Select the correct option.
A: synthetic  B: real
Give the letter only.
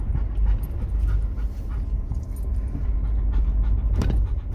B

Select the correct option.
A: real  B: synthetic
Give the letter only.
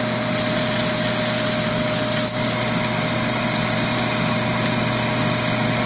A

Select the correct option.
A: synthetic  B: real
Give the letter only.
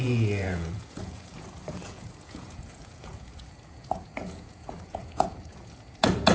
A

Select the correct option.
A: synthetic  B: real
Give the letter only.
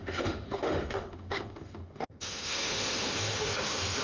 A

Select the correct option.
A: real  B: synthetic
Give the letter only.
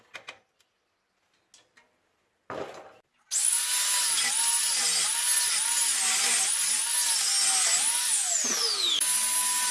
A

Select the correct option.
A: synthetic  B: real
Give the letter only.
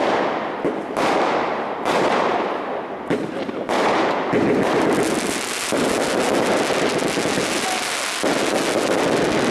B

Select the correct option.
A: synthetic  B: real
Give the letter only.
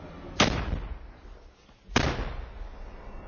B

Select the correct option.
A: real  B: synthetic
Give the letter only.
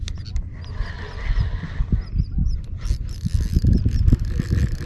A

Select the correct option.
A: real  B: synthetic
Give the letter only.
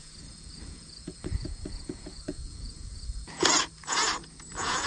B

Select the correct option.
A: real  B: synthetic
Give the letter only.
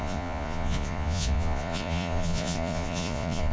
B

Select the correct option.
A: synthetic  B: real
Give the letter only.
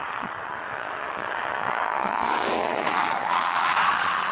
A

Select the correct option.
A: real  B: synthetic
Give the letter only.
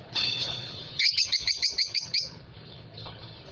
B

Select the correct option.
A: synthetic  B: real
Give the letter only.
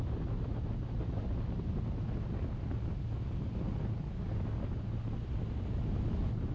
B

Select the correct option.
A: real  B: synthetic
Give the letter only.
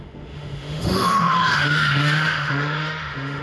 B